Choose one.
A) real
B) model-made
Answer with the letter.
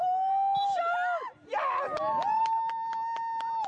A